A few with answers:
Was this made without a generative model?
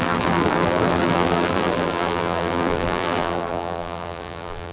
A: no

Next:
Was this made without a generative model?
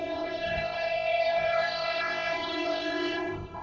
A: no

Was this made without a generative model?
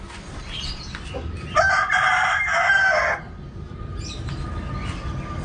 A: yes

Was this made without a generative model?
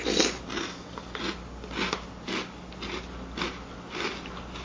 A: yes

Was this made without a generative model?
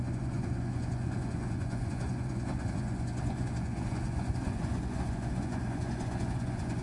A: no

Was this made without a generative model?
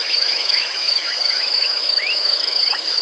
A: no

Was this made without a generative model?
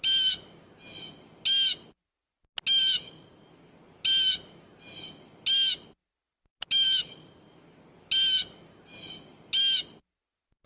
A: yes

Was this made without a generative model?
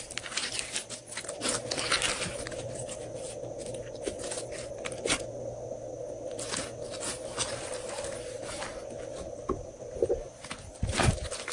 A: yes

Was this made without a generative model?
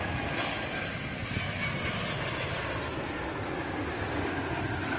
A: yes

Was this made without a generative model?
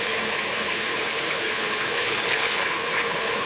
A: no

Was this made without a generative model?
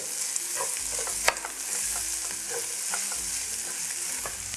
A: yes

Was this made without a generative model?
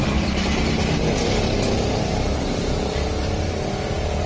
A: yes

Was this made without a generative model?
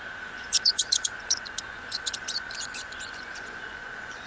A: no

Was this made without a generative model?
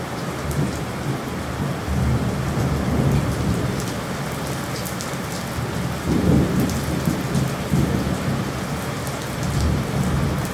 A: yes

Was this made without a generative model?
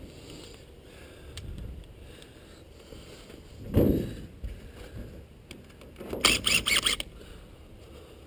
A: yes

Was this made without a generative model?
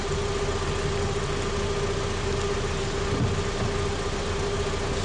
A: yes